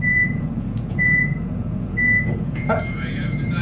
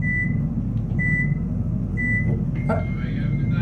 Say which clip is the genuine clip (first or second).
second